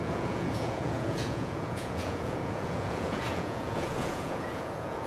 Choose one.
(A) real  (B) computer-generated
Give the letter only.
B